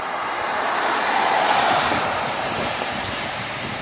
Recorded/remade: remade